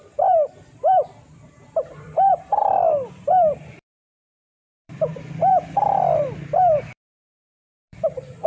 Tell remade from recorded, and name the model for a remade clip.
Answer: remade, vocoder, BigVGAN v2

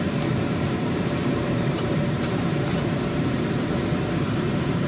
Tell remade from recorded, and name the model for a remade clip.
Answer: remade, vocoder, BigVGAN v2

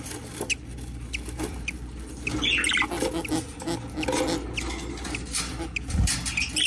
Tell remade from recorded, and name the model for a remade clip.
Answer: recorded